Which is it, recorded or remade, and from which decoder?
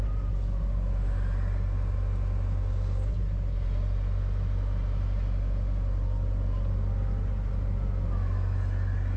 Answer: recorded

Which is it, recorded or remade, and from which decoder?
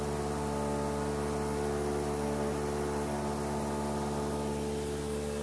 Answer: recorded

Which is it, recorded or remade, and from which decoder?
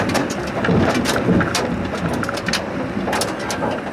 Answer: recorded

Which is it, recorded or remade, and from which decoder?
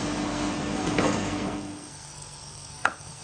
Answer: remade, codec, SNAC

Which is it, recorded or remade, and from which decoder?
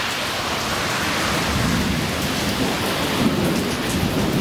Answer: recorded